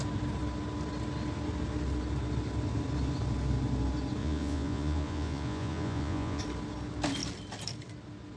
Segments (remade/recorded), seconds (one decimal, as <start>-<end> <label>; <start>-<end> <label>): 0.0-4.2 recorded; 4.2-6.4 remade; 6.4-8.4 recorded